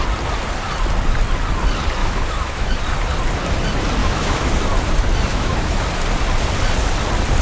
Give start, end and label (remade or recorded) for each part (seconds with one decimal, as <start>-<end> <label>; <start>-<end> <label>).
0.0-2.0 recorded; 2.0-2.8 remade; 2.8-4.0 recorded; 4.0-4.5 remade; 4.5-5.3 recorded; 5.3-5.8 remade; 5.8-7.4 recorded